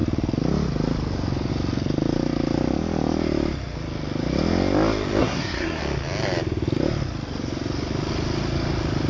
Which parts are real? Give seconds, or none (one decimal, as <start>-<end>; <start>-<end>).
0.0-5.2; 5.8-9.1